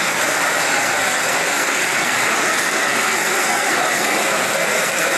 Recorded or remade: remade